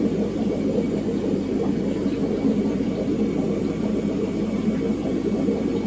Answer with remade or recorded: recorded